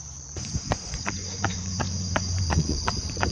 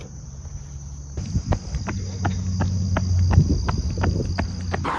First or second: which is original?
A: second